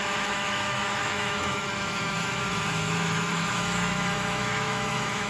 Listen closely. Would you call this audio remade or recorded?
remade